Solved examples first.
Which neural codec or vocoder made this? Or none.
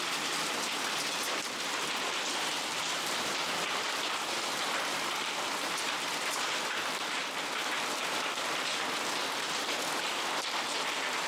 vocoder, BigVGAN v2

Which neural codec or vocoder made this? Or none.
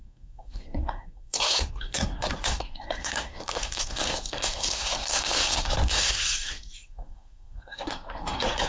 codec, SNAC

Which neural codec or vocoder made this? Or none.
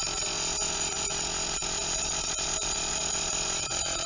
vocoder, Vocos